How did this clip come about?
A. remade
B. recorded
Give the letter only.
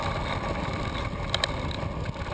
B